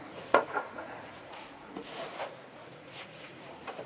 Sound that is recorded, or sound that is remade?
remade